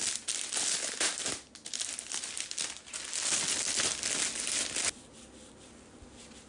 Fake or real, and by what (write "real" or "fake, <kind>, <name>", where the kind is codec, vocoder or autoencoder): real